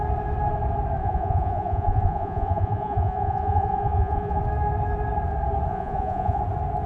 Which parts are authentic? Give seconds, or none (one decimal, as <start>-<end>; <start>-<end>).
0.0-1.0; 4.4-5.7; 6.4-6.9